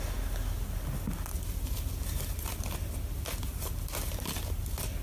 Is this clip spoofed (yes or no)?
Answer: no